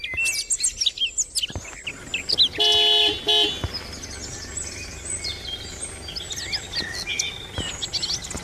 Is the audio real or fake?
real